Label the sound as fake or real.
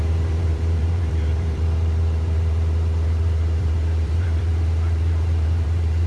fake